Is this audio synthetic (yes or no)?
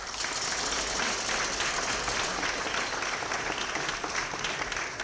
no